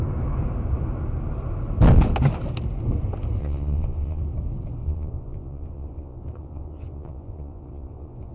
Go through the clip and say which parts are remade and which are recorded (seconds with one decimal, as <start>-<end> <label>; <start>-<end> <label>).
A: 0.0-3.4 recorded; 3.4-4.2 remade; 4.2-4.8 recorded; 4.8-8.3 remade

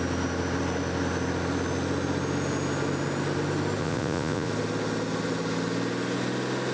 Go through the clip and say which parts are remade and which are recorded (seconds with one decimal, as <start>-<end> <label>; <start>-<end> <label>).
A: 0.0-3.8 recorded; 3.8-4.5 remade; 4.5-6.7 recorded

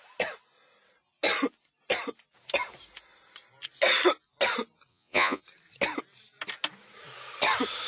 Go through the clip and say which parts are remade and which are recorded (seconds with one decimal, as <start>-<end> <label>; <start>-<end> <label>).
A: 0.0-4.9 recorded; 4.9-5.4 remade; 5.4-7.9 recorded

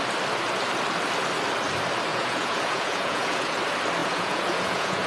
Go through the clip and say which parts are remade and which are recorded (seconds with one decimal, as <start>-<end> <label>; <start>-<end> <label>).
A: 0.0-2.1 recorded; 2.1-3.6 remade; 3.6-4.0 recorded; 4.0-5.1 remade

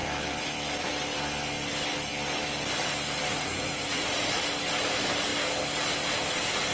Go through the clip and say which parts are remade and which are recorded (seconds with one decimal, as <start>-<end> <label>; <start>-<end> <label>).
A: 0.0-3.3 recorded; 3.3-4.2 remade; 4.2-6.7 recorded